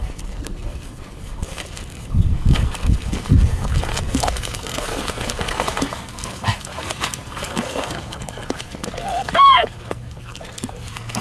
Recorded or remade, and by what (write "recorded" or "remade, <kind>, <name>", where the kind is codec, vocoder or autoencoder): remade, codec, SNAC